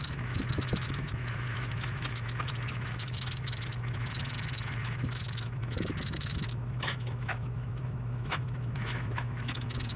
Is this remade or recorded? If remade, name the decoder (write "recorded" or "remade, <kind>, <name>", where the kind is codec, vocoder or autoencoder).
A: remade, autoencoder, DAC-VAE